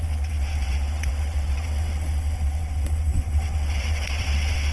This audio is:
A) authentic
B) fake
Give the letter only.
B